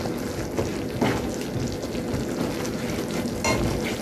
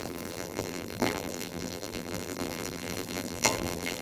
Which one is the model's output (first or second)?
second